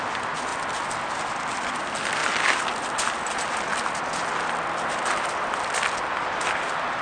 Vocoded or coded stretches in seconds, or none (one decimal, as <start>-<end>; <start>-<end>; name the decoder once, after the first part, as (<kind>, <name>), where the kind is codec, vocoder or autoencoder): none